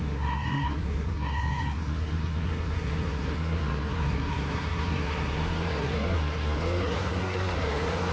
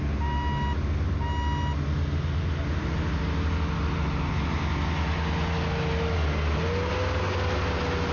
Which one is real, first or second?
second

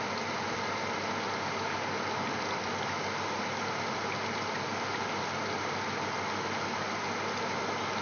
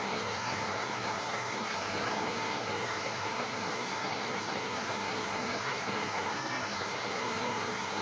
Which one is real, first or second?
first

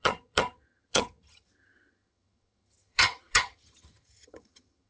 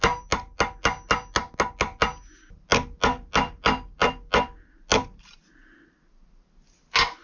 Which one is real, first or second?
second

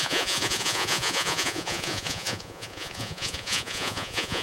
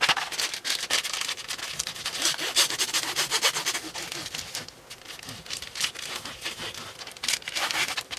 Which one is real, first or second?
second